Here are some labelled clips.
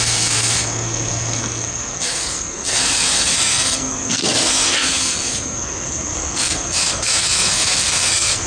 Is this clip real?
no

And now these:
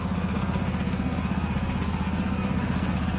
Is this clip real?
no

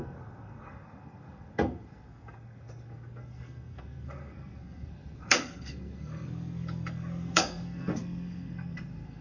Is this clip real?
no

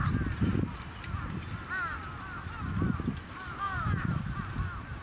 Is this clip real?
yes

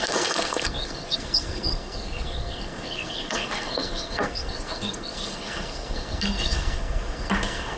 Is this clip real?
no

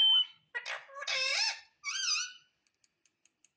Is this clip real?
yes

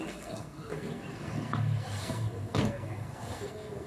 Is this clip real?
no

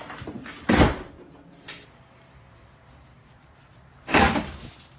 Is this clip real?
yes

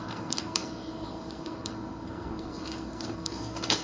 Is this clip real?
no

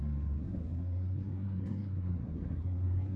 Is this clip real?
no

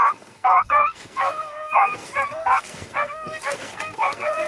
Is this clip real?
no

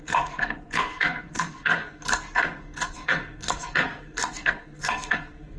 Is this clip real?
no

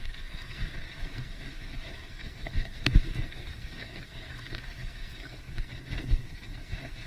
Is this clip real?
no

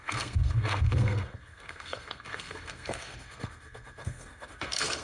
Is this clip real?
no